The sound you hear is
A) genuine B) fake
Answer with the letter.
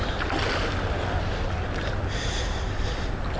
A